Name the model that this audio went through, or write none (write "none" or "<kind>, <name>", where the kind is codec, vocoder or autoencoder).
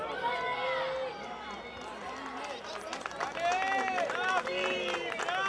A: none